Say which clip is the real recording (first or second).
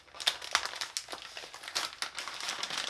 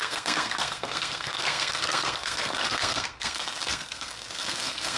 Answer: first